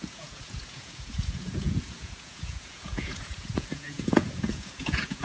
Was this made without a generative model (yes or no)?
no